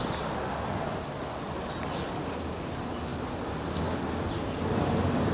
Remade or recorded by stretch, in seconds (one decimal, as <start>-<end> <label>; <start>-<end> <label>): 0.0-5.3 recorded